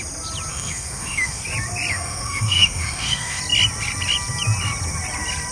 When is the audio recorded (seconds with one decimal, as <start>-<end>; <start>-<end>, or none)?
0.0-0.5; 1.4-1.9; 3.4-5.5